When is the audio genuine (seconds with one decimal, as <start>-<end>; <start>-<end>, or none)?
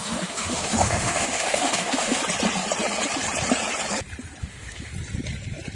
2.2-4.4; 4.9-5.8